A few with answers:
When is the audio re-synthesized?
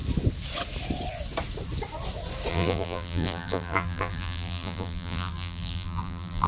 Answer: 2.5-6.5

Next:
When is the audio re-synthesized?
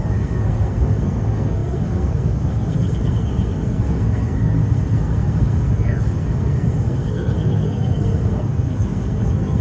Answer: 0.0-9.6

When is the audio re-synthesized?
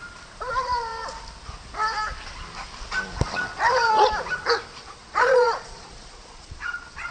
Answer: 5.0-7.1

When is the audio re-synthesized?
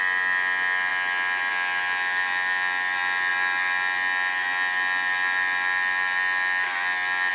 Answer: none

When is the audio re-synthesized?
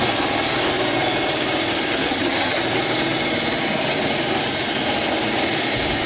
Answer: 2.0-2.6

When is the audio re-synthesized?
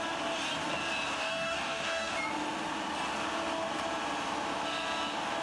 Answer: 1.2-2.1